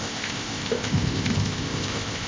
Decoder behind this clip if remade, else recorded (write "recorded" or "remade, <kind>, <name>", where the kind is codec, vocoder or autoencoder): remade, codec, ZipCodec